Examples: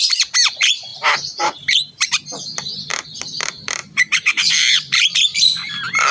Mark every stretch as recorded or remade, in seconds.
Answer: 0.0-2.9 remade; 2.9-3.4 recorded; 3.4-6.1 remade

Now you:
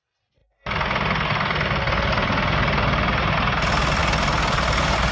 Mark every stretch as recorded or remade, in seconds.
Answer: 0.0-5.1 recorded

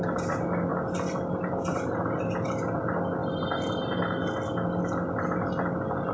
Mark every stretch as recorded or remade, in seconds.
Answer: 0.0-0.7 recorded; 0.7-1.5 remade; 1.5-3.2 recorded; 3.2-4.8 remade; 4.8-6.1 recorded